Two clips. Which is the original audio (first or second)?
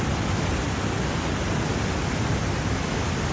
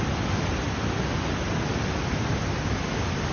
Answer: second